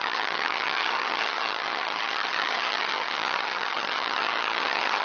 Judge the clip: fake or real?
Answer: fake